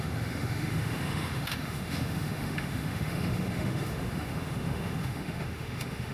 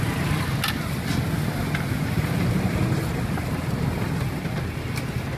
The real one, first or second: second